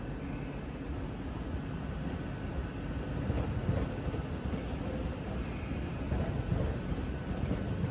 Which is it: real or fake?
real